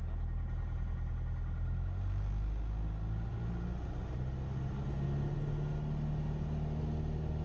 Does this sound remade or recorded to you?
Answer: recorded